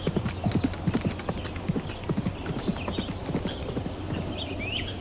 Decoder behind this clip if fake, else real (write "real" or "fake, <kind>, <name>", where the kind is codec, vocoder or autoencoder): real